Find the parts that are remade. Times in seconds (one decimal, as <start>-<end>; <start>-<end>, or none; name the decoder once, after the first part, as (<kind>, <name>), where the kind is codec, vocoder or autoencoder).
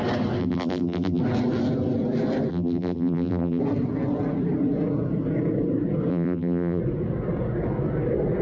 0.4-1.2 (vocoder, BigVGAN v2); 2.5-3.6; 6.1-6.8